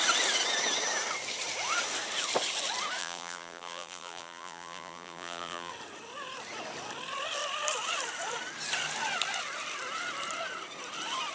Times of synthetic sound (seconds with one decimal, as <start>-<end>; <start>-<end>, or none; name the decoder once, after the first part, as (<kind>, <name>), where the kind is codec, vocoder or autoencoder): 3.0-5.7 (vocoder, BigVGAN v2)

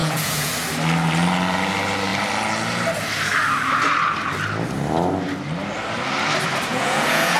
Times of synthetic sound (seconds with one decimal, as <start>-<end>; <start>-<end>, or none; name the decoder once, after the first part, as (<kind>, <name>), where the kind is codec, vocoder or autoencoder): 0.0-0.5 (vocoder, Vocos); 6.7-7.4